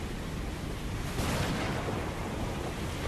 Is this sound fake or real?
real